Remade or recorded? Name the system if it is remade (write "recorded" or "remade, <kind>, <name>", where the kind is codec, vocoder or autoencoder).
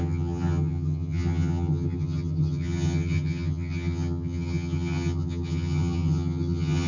remade, vocoder, HiFi-GAN